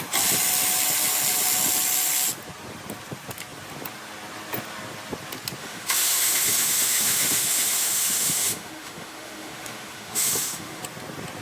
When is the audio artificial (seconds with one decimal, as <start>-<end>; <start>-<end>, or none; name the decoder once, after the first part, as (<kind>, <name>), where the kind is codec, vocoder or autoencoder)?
5.6-10.8 (autoencoder, DAC-VAE)